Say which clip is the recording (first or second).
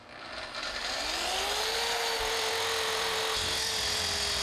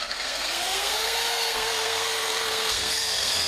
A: first